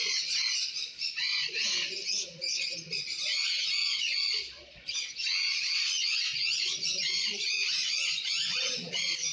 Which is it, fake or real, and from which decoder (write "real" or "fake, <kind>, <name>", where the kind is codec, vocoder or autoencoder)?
fake, vocoder, Vocos